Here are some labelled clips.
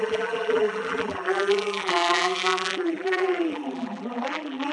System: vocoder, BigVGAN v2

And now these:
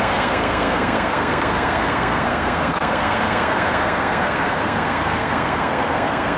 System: codec, SNAC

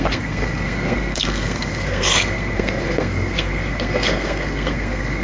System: codec, SNAC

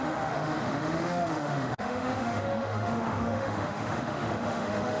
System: autoencoder, DAC-VAE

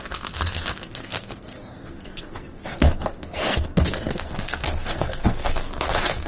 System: codec, SNAC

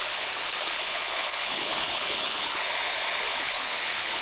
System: codec, HILCodec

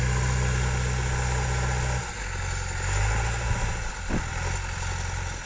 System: none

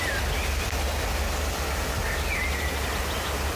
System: none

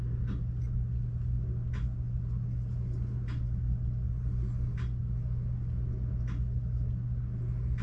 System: none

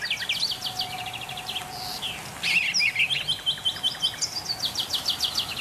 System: none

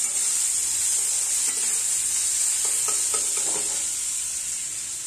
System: none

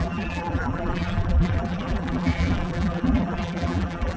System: vocoder, BigVGAN v2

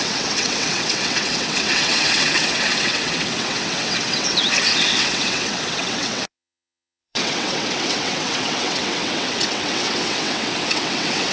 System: vocoder, WaveNeXt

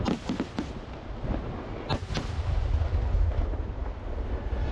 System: none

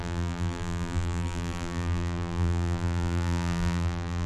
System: vocoder, BigVGAN v2